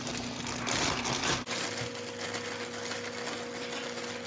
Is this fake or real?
real